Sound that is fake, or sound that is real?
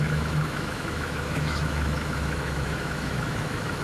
fake